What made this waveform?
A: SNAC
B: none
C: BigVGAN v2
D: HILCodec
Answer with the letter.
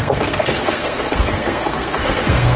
A